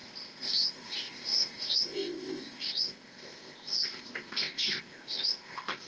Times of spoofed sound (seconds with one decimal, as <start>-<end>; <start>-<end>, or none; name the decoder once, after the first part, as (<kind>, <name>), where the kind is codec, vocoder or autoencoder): 0.0-5.9 (codec, ZipCodec)